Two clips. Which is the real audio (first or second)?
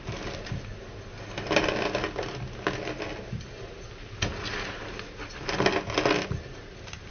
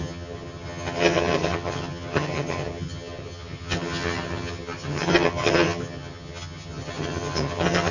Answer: first